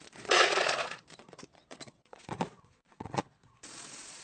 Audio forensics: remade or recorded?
remade